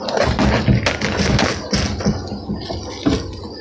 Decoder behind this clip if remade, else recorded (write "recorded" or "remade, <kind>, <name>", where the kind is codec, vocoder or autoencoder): recorded